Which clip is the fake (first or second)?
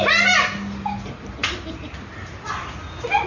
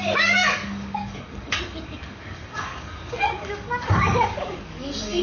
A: second